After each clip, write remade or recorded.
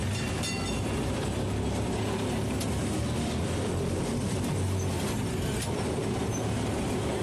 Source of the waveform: recorded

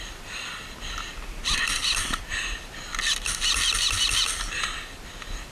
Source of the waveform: recorded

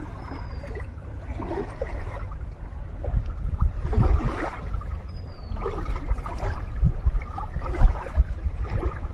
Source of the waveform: remade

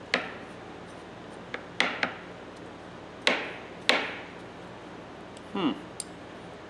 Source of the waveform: recorded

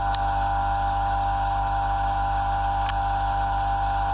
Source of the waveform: recorded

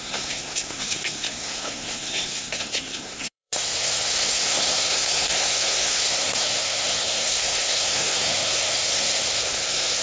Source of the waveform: remade